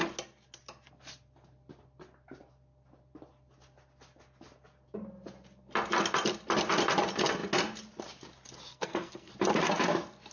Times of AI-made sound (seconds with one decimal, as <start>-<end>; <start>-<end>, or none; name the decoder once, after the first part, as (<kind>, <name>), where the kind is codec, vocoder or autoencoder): 8.7-9.3 (codec, SNAC)